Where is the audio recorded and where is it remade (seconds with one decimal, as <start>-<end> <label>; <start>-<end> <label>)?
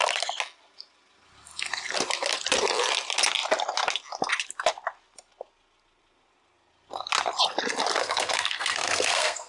0.0-8.0 recorded; 8.0-9.5 remade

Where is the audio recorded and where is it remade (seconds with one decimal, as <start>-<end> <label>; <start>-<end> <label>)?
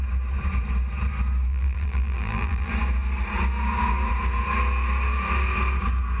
0.0-1.5 recorded; 1.5-2.7 remade; 2.7-6.2 recorded